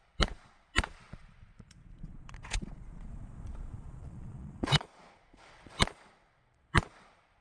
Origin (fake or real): fake